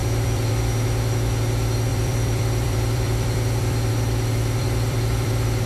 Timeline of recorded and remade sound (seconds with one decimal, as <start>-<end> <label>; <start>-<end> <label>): 0.0-0.5 remade; 0.5-1.9 recorded; 1.9-3.9 remade; 3.9-4.6 recorded; 4.6-5.7 remade